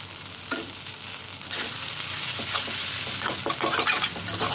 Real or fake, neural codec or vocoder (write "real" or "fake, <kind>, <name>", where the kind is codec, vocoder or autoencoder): real